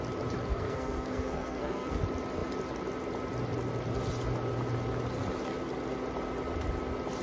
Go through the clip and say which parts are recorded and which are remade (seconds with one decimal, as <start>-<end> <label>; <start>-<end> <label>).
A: 0.0-0.5 recorded; 0.5-2.0 remade; 2.0-7.2 recorded